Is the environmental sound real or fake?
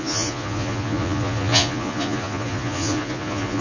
fake